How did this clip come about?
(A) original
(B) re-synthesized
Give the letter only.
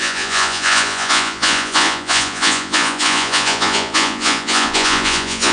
B